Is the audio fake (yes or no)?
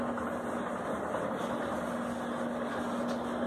no